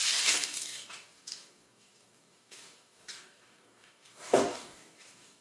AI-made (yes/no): yes